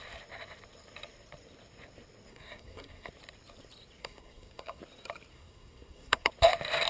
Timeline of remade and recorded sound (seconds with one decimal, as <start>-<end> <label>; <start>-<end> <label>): 0.0-2.3 recorded; 2.3-3.1 remade; 3.1-4.0 recorded; 4.0-4.8 remade; 4.8-5.3 recorded; 5.3-6.3 remade; 6.3-6.9 recorded